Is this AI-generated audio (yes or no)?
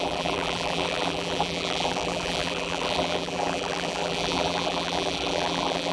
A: yes